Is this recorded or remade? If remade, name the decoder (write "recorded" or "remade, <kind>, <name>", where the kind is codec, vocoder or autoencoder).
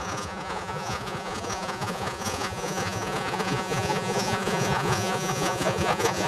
remade, vocoder, Vocos